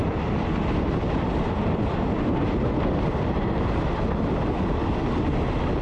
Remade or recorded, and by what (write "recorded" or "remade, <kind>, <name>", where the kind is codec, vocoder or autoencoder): recorded